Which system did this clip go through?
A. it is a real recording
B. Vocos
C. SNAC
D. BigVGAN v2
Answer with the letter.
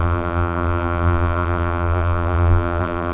D